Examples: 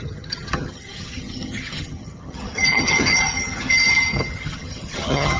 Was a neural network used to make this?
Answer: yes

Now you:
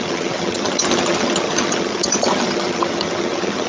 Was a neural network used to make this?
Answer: yes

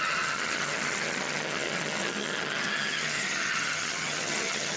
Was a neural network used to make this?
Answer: yes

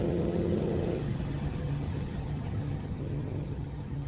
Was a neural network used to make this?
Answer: yes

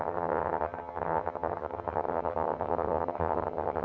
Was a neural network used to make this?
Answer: yes